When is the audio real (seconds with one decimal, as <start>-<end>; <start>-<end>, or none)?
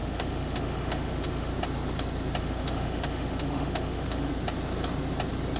1.5-2.4; 4.3-5.6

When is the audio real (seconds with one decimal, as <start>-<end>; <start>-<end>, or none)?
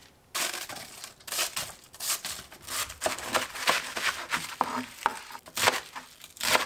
0.0-6.7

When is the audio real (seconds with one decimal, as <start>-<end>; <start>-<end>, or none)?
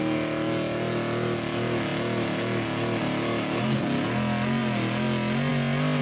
0.0-6.0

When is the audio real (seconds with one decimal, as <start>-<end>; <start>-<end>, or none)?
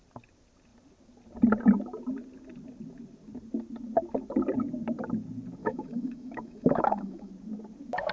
0.0-5.6; 7.3-8.1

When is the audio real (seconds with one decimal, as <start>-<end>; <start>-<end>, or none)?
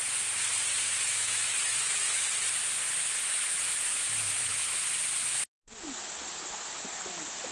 0.0-0.7; 2.2-3.3; 4.7-7.5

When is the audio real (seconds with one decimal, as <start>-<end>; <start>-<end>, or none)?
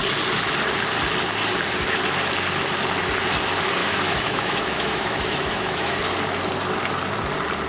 0.0-3.8; 6.0-7.7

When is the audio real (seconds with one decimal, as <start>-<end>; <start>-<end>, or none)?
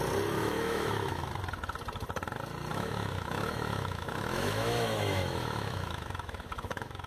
0.0-0.4; 1.2-2.7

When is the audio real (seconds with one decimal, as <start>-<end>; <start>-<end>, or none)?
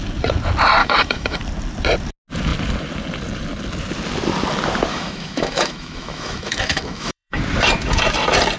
0.0-0.8; 1.4-4.9; 7.4-8.6